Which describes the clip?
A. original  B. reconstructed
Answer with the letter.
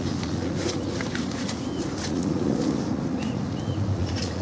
B